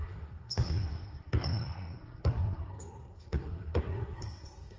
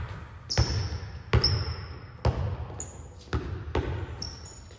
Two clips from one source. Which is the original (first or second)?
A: second